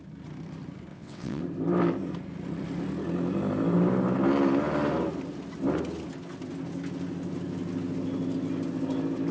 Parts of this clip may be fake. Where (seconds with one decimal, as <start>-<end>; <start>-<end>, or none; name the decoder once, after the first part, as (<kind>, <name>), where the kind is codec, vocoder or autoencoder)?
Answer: 0.9-1.4 (vocoder, WaveNeXt)